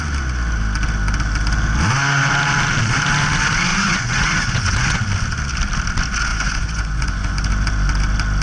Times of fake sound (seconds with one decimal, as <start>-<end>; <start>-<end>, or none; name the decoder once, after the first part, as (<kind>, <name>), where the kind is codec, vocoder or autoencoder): 3.7-5.0 (vocoder, Vocos); 6.3-7.5